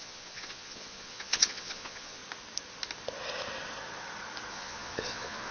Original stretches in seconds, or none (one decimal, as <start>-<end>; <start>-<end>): 2.2-4.5